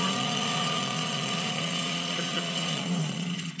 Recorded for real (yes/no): no